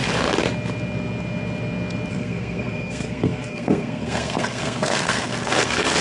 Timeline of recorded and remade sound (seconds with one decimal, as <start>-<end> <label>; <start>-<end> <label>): 0.0-2.1 recorded; 2.1-6.0 remade